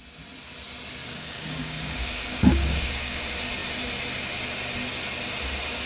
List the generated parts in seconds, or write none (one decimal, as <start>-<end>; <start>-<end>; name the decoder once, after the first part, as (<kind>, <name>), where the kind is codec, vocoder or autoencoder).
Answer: 1.0-3.2 (codec, DAC)